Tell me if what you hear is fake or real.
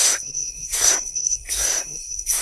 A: fake